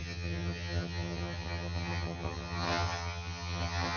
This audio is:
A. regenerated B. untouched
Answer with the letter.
A